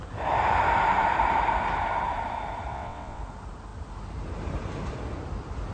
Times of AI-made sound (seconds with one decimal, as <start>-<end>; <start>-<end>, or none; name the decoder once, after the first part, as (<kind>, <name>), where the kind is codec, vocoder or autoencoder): 2.7-3.2 (vocoder, WaveNeXt)